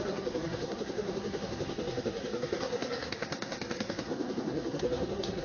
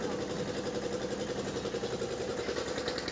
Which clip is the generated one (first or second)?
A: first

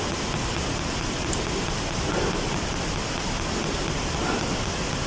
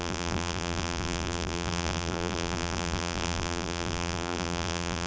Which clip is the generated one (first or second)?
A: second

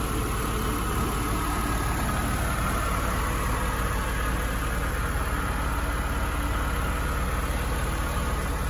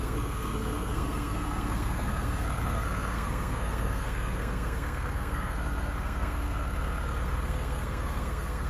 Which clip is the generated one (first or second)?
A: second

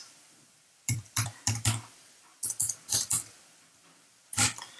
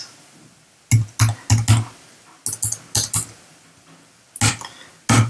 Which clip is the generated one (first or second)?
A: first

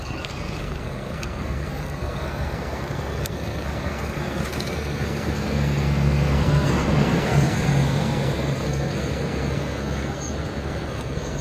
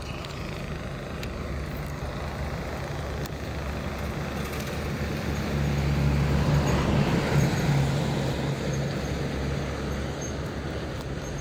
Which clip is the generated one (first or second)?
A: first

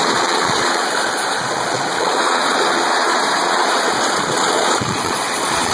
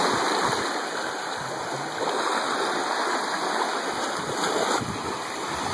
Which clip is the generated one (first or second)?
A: first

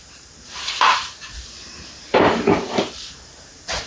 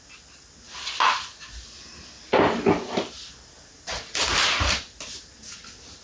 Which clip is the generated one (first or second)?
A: first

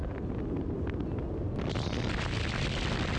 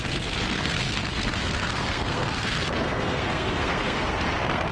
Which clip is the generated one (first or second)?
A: second